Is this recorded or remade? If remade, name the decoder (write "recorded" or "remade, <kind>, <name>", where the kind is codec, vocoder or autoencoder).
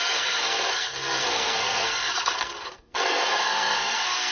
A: remade, codec, SNAC